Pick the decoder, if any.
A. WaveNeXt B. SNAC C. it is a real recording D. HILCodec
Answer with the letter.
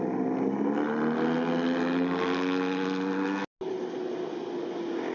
C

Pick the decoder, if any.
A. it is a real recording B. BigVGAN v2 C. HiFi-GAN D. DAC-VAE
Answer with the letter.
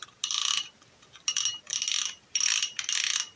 A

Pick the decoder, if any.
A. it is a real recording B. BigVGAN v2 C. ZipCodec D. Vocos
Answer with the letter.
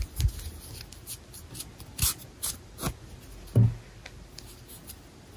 A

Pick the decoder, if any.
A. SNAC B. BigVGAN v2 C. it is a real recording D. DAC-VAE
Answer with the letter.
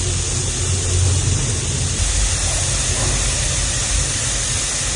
C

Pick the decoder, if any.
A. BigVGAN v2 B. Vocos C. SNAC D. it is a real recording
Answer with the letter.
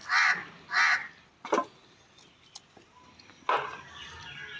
D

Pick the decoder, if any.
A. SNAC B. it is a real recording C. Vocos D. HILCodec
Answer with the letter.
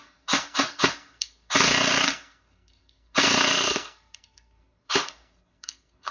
A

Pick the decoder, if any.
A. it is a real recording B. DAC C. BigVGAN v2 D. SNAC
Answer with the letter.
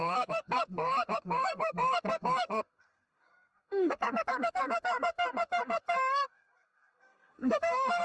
D